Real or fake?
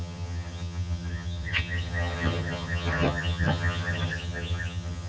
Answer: fake